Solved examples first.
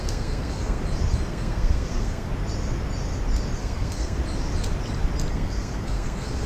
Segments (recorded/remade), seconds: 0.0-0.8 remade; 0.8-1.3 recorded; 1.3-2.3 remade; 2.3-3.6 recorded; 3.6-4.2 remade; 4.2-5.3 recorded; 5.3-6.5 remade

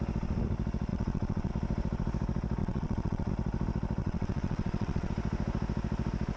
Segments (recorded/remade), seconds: 0.0-0.9 recorded; 0.9-1.5 remade; 1.5-2.6 recorded; 2.6-3.3 remade; 3.3-4.0 recorded; 4.0-5.1 remade; 5.1-6.4 recorded

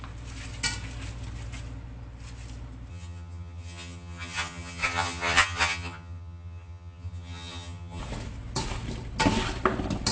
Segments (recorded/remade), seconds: 0.0-2.9 recorded; 2.9-8.0 remade; 8.0-10.1 recorded

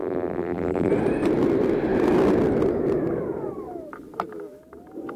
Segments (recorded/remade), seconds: 0.0-0.9 remade; 0.9-5.2 recorded